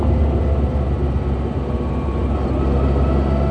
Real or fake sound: real